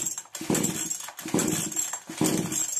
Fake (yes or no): no